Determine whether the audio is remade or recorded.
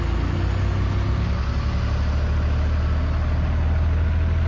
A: recorded